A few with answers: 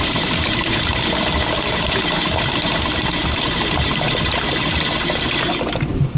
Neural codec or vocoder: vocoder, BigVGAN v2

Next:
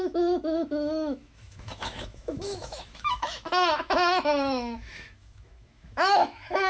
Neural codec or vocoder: autoencoder, DAC-VAE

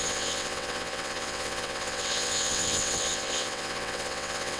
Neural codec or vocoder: vocoder, WaveNeXt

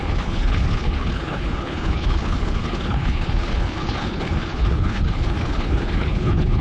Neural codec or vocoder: codec, HILCodec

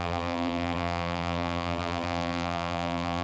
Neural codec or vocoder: vocoder, BigVGAN v2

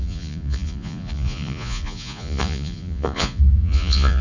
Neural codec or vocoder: vocoder, Vocos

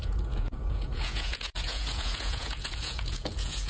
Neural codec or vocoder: vocoder, Vocos